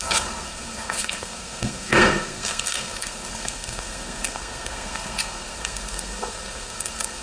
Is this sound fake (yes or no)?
yes